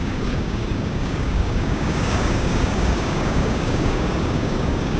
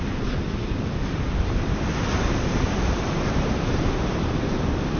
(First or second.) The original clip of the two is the second